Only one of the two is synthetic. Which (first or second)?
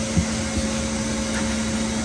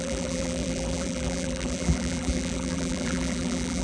second